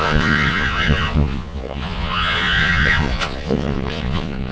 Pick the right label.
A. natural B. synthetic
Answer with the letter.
B